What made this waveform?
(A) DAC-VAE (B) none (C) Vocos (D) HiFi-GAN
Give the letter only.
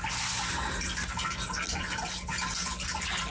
B